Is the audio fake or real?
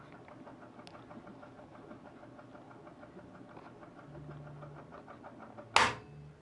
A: real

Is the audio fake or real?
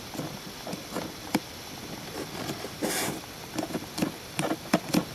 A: real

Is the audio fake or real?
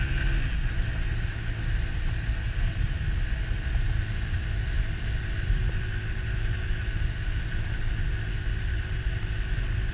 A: real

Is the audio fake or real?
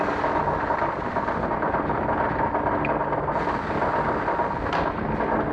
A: real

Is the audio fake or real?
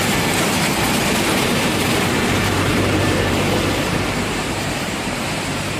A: fake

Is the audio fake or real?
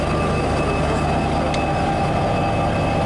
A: real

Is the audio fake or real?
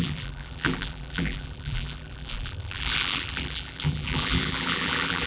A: fake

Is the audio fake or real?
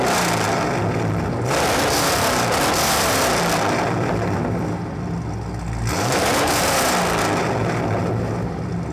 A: real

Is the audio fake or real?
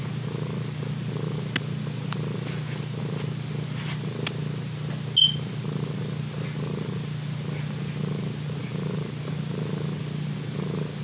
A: real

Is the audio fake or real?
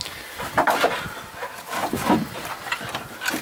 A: real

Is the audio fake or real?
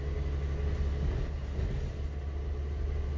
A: real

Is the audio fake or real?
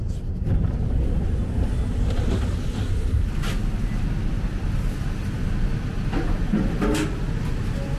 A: real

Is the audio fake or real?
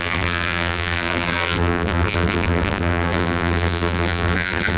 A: fake